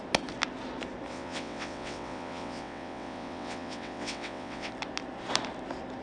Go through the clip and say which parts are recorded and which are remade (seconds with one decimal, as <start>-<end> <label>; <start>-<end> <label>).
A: 0.0-1.1 recorded; 1.1-4.7 remade; 4.7-6.0 recorded